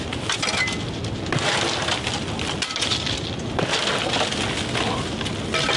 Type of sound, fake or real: real